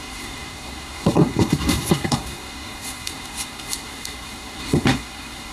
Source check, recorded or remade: remade